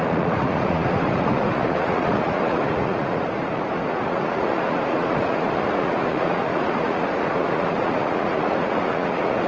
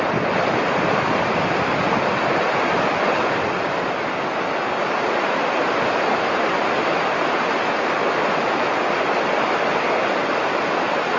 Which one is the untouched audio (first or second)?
second